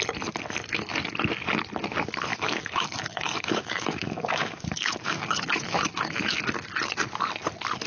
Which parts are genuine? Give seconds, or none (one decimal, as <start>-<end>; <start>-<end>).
0.0-2.3; 6.4-7.9